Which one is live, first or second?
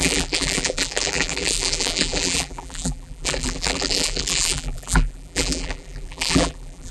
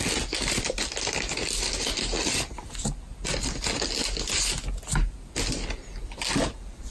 second